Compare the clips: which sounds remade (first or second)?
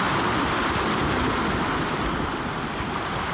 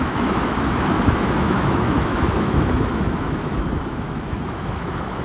second